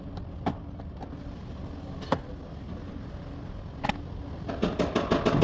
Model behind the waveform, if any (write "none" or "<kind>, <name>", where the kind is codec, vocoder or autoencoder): none